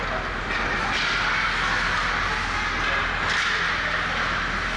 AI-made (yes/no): no